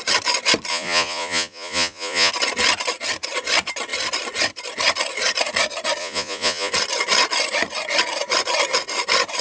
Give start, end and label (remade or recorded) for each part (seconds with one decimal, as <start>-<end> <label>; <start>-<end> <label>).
0.0-0.7 recorded; 0.7-2.3 remade; 2.3-6.0 recorded; 6.0-6.7 remade; 6.7-9.4 recorded

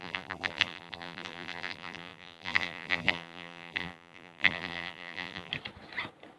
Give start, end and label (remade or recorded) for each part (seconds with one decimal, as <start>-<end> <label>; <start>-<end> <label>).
0.0-5.5 remade; 5.5-6.4 recorded

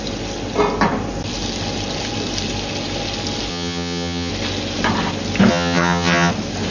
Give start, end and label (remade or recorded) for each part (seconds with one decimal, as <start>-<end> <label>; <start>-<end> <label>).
0.0-3.5 recorded; 3.5-4.3 remade; 4.3-5.5 recorded; 5.5-6.3 remade; 6.3-6.7 recorded

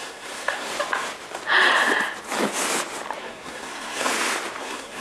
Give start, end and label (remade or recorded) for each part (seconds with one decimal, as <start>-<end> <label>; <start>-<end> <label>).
0.0-0.7 remade; 0.7-3.2 recorded; 3.2-4.1 remade; 4.1-4.6 recorded; 4.6-5.0 remade

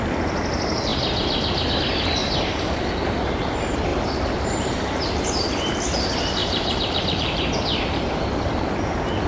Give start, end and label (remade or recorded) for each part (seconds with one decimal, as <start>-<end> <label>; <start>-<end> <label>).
0.0-2.2 recorded; 2.2-2.9 remade; 2.9-3.9 recorded; 3.9-5.3 remade; 5.3-6.4 recorded; 6.4-7.4 remade; 7.4-9.3 recorded